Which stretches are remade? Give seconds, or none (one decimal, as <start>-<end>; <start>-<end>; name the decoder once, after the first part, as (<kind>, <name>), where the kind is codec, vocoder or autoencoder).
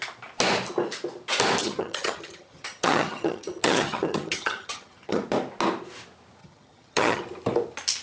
1.6-5.2 (vocoder, HiFi-GAN); 6.4-7.2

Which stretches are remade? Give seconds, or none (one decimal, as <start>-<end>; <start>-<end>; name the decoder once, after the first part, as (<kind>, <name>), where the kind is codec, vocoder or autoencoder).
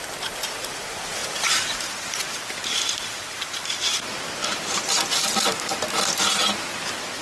1.2-5.5 (vocoder, BigVGAN v2)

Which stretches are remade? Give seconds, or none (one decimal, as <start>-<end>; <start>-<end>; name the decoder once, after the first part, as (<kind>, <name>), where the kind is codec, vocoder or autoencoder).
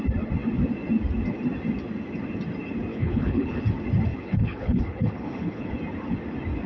2.9-3.6 (codec, HILCodec); 4.1-5.7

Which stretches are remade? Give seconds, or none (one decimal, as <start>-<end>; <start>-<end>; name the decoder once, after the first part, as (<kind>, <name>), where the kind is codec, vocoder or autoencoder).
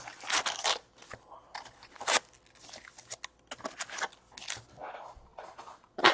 5.3-6.1 (vocoder, Vocos)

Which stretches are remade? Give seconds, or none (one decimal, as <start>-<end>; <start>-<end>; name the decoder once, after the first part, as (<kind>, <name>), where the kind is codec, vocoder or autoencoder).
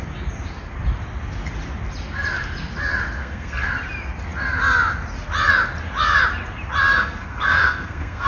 3.2-3.7 (codec, SNAC); 6.9-8.3